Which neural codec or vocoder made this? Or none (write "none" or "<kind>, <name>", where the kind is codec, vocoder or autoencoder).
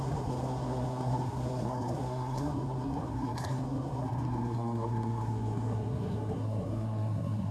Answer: codec, SNAC